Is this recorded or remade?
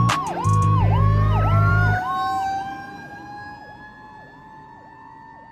recorded